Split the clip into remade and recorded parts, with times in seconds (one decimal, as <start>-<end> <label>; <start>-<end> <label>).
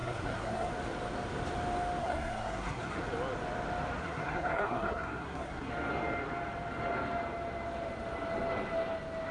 0.0-0.7 remade; 0.7-2.0 recorded; 2.0-3.0 remade; 3.0-4.0 recorded; 4.0-5.7 remade; 5.7-9.3 recorded